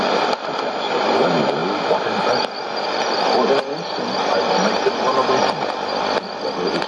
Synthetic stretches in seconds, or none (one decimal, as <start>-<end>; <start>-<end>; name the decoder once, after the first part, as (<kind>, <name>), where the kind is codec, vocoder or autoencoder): none